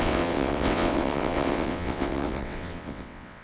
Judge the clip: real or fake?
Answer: fake